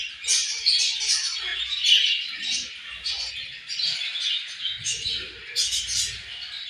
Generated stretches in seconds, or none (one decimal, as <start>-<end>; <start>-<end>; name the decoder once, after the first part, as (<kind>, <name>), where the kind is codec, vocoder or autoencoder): none